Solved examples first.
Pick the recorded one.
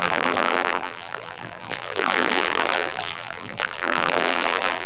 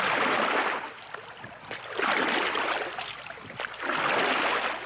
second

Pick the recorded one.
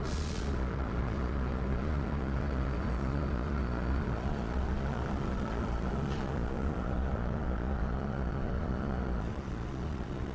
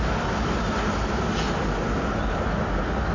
second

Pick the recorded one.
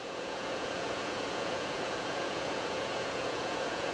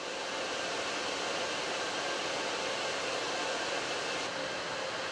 second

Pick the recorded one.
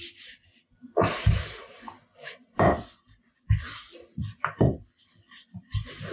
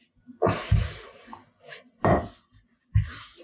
second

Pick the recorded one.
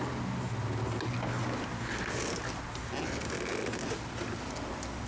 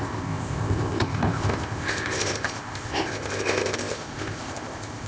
first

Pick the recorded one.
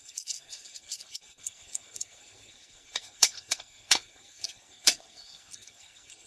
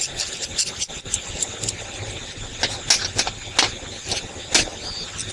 second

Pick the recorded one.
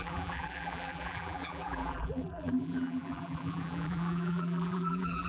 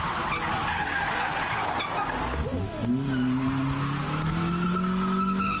second